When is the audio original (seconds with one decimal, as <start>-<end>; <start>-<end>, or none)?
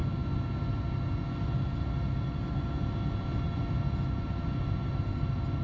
0.0-5.6